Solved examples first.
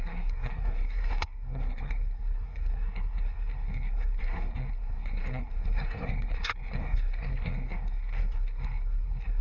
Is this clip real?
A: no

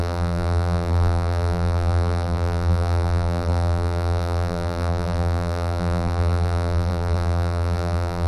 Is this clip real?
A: no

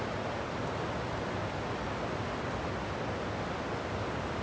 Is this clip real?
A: yes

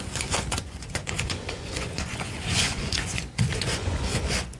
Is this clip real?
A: no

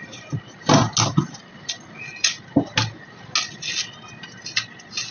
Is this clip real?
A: yes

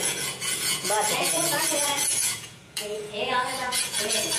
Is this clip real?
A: no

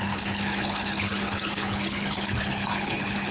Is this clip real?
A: no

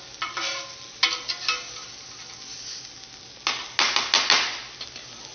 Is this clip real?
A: yes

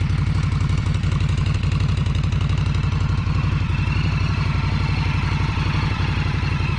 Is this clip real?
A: yes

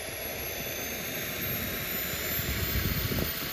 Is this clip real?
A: yes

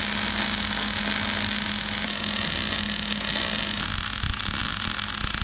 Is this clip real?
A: yes